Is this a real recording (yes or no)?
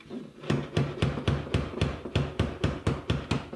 yes